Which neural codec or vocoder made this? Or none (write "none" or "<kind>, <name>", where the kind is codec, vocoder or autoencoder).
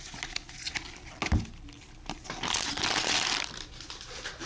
none